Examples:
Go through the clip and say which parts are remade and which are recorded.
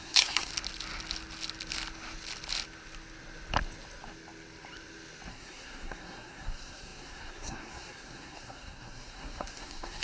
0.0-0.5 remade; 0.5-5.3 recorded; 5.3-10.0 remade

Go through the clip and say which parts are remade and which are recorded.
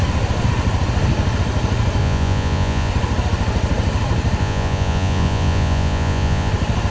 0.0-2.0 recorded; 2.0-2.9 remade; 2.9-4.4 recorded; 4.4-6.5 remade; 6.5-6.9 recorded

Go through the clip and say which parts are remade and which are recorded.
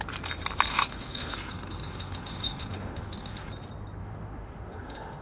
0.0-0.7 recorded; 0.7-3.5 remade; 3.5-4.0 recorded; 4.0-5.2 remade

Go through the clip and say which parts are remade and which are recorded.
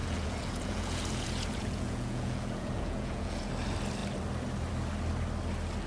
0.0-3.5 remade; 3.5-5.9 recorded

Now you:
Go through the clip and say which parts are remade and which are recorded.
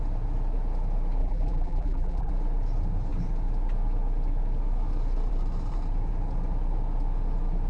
0.0-1.2 recorded; 1.2-2.3 remade; 2.3-7.7 recorded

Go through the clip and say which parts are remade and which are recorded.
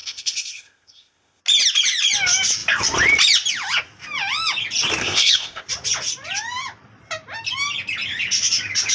0.0-1.4 remade; 1.4-5.0 recorded; 5.0-5.6 remade; 5.6-8.9 recorded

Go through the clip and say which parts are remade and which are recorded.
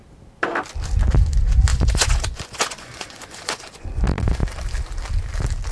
0.0-1.7 recorded; 1.7-4.0 remade; 4.0-5.7 recorded